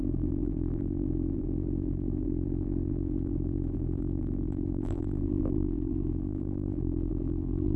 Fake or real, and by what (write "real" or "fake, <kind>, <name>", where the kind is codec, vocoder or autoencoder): fake, vocoder, BigVGAN v2